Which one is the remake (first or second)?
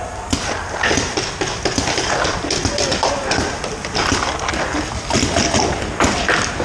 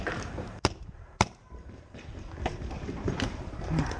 second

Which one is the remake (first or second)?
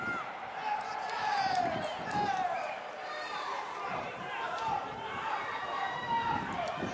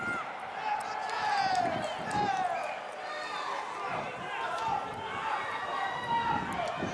first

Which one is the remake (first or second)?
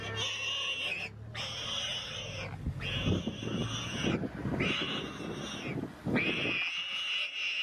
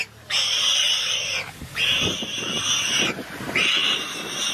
second